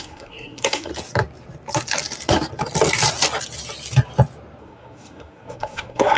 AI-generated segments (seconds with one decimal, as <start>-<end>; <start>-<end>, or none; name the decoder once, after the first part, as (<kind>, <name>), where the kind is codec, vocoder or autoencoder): 0.0-0.9 (codec, SNAC); 4.6-6.2